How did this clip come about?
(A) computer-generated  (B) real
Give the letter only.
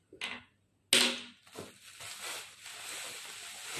B